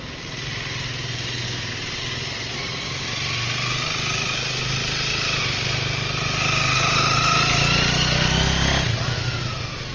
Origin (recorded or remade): recorded